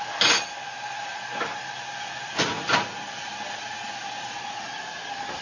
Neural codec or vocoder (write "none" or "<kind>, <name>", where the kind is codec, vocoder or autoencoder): none